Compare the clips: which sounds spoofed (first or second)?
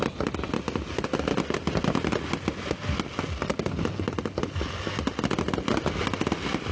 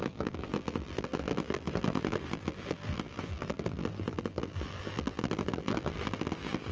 second